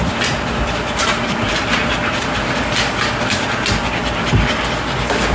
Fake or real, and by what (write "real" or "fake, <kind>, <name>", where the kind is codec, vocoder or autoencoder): real